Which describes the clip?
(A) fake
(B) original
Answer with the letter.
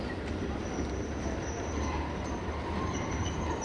B